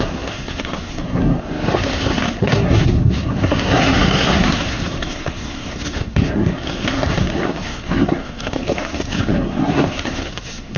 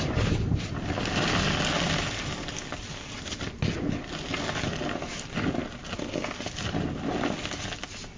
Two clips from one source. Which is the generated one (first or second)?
first